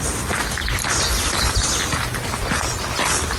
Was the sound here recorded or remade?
recorded